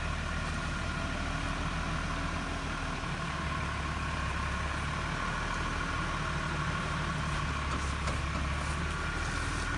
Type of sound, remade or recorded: recorded